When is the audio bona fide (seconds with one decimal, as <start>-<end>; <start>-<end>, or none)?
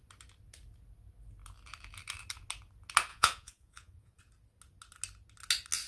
0.0-3.1; 4.2-5.9